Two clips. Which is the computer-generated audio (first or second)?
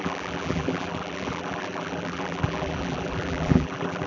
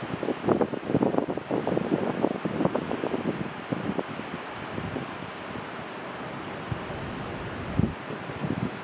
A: first